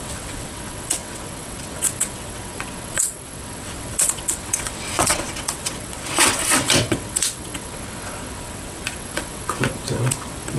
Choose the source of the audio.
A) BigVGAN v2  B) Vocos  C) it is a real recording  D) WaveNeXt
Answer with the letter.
D